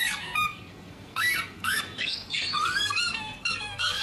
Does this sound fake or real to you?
fake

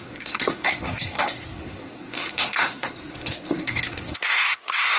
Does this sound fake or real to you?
fake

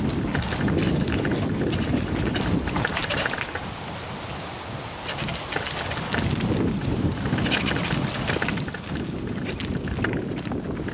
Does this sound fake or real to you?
real